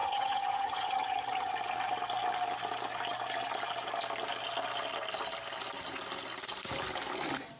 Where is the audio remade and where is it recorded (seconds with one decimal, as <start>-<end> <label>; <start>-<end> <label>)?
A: 0.0-1.5 remade; 1.5-7.6 recorded